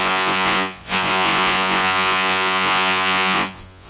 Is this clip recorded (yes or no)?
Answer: no